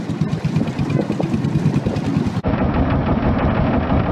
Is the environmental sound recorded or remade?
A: recorded